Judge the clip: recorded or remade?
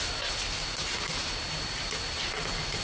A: recorded